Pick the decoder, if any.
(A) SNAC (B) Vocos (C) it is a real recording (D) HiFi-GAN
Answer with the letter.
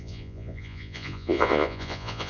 B